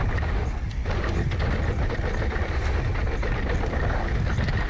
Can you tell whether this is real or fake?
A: real